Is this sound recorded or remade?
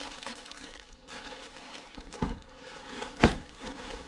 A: remade